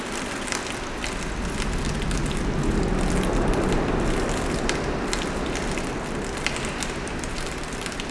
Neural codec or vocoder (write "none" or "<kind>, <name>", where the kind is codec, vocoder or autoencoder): none